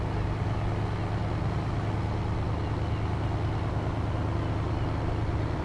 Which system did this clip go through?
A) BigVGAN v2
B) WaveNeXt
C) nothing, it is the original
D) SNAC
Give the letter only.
C